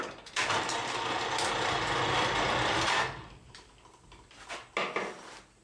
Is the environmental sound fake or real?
real